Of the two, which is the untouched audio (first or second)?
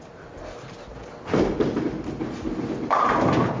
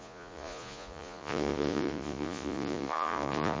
first